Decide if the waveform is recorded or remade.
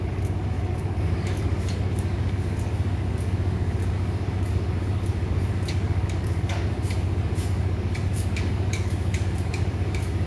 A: remade